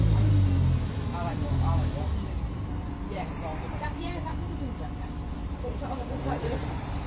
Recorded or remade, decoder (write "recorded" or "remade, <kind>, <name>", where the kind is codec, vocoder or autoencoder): recorded